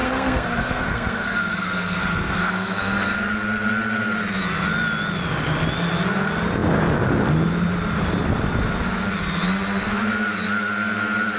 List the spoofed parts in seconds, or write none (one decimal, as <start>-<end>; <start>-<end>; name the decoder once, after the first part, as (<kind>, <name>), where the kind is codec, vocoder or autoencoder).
0.0-3.3 (codec, SNAC)